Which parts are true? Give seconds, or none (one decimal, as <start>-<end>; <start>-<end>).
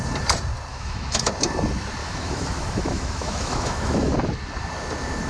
0.0-0.7; 1.3-2.0; 4.1-5.3